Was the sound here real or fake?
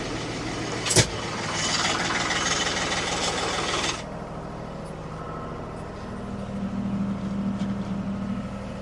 real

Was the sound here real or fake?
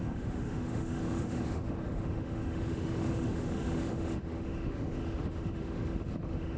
fake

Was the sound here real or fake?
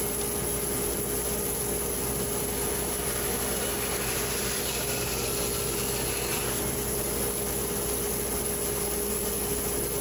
real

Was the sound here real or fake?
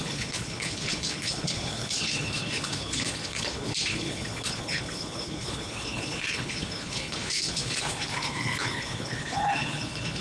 fake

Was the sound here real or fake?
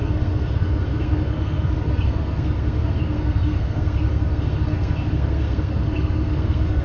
fake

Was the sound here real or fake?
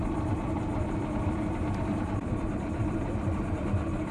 fake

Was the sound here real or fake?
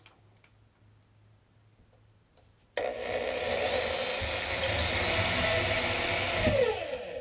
real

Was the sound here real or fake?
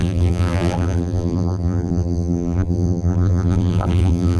fake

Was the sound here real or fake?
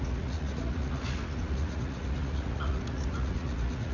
fake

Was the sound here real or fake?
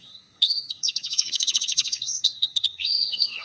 fake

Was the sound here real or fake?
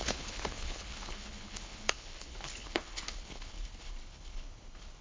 fake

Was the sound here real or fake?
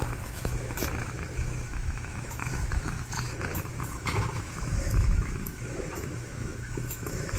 fake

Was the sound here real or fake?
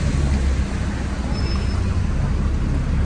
real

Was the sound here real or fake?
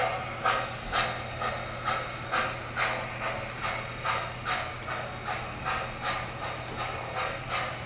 real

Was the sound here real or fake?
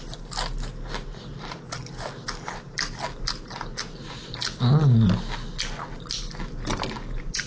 real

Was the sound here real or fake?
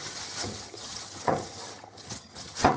fake